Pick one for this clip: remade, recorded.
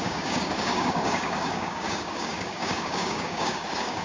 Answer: remade